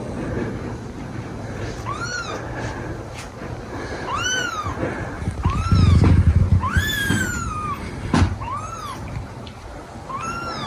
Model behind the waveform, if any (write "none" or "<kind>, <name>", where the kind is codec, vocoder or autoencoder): none